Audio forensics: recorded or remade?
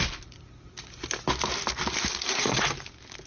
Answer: recorded